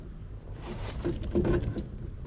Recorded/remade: recorded